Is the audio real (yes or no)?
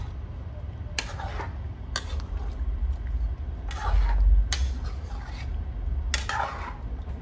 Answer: yes